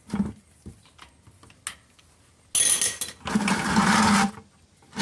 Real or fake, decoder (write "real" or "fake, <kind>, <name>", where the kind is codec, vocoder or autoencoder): real